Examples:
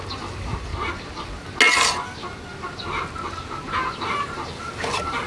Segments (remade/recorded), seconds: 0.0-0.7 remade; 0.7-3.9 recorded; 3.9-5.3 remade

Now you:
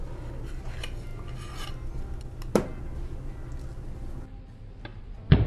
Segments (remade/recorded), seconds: 0.0-4.9 recorded; 4.9-5.5 remade

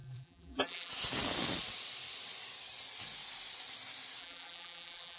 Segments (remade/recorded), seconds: 0.0-0.9 remade; 0.9-4.2 recorded; 4.2-5.2 remade

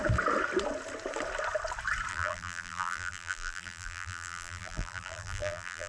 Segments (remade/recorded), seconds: 0.0-2.1 recorded; 2.1-5.9 remade